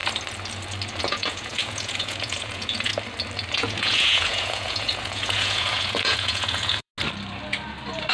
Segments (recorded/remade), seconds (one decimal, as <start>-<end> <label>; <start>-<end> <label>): 0.0-1.0 recorded; 1.0-2.9 remade; 2.9-3.5 recorded; 3.5-6.9 remade; 6.9-8.1 recorded